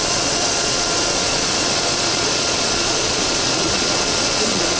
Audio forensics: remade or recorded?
remade